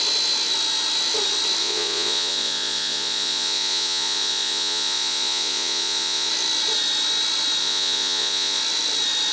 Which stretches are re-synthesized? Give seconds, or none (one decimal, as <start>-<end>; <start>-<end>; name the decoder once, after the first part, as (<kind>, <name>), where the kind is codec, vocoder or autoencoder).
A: 1.6-6.3 (vocoder, Vocos); 7.6-8.6